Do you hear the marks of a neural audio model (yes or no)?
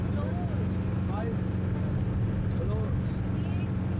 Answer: no